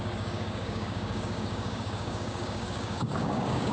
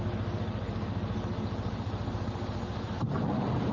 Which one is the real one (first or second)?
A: second